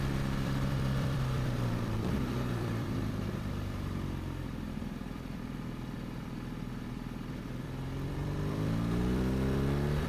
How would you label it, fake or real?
fake